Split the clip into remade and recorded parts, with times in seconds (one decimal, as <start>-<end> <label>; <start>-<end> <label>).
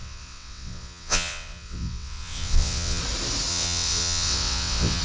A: 0.0-3.0 remade; 3.0-3.5 recorded; 3.5-5.0 remade